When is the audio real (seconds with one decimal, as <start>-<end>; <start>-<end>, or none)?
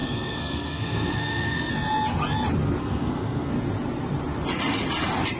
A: 1.7-2.8; 3.5-5.4